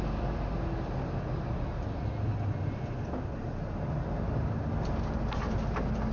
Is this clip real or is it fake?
real